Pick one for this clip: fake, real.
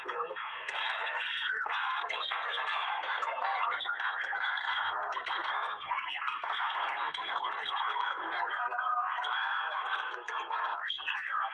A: fake